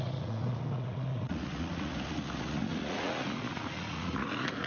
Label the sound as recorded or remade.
remade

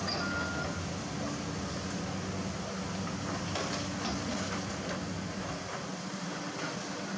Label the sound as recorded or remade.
recorded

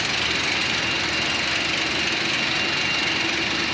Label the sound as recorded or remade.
recorded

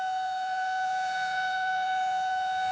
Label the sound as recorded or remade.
remade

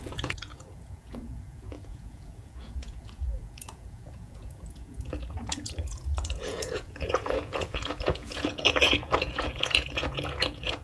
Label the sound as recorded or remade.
remade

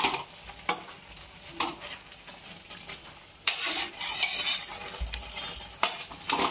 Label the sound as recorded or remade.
recorded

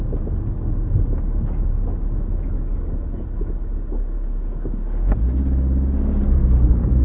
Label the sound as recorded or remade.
recorded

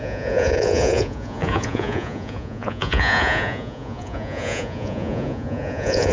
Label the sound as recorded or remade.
remade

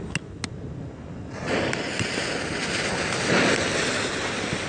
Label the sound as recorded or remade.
recorded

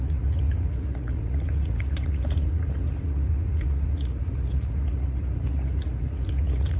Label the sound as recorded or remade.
remade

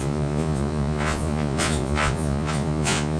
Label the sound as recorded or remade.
remade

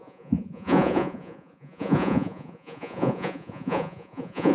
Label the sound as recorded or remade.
remade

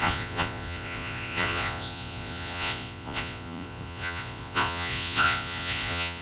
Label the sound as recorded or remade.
remade